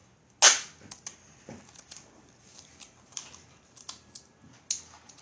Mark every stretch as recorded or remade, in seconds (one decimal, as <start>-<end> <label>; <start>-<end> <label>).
0.0-5.2 recorded